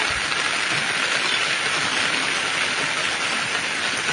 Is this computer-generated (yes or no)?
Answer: no